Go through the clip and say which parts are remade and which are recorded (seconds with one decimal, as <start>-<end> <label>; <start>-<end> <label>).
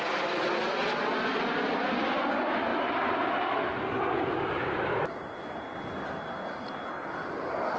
0.0-7.8 recorded